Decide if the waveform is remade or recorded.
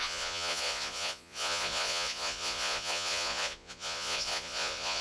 remade